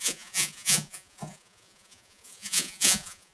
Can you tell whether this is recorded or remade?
remade